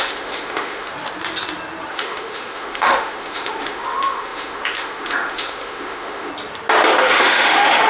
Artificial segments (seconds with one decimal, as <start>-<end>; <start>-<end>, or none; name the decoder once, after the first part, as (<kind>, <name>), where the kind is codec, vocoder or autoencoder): 0.0-0.9 (autoencoder, DAC-VAE); 1.9-6.3; 7.0-7.9